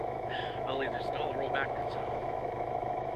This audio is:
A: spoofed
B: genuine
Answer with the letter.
A